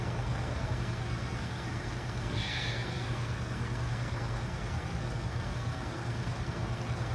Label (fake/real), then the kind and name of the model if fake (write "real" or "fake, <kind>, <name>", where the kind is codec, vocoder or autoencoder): fake, codec, SNAC